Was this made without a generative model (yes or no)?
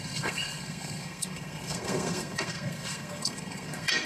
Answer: no